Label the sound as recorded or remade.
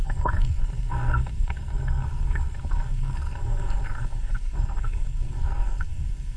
remade